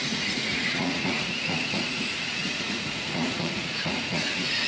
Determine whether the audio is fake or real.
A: fake